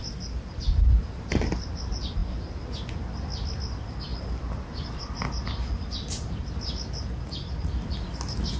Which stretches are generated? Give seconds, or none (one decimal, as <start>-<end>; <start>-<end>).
none